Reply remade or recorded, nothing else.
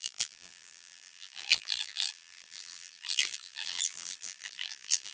remade